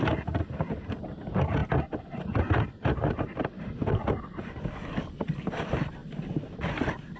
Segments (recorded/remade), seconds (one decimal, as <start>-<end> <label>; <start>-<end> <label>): 0.0-7.2 recorded